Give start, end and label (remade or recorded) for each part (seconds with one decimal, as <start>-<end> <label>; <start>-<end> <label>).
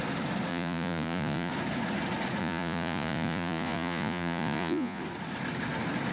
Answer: 0.0-0.5 recorded; 0.5-1.5 remade; 1.5-2.4 recorded; 2.4-5.0 remade; 5.0-6.1 recorded